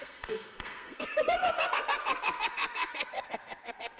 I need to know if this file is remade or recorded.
remade